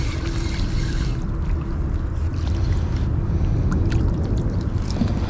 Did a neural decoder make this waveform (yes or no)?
no